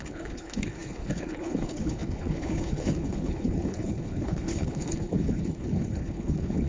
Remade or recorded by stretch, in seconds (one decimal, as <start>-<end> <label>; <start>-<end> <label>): 0.0-6.7 remade